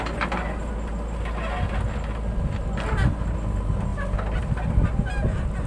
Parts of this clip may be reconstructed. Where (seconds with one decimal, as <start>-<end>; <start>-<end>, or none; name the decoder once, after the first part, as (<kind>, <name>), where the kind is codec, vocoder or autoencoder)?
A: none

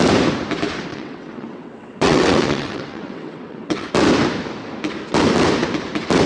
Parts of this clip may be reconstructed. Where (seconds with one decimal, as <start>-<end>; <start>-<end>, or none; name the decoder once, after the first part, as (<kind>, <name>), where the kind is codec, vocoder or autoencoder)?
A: 0.9-3.9 (vocoder, WaveNeXt)

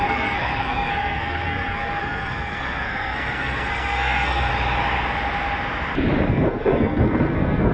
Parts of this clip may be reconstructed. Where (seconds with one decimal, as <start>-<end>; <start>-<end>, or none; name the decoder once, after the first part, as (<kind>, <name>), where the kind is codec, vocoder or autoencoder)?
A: 0.0-4.5 (codec, SNAC); 6.3-7.7

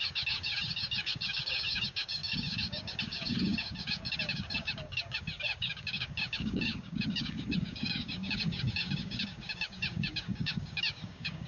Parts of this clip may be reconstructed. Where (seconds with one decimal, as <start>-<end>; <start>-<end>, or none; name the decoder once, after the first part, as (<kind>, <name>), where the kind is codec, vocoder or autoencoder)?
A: 0.0-11.5 (codec, DAC)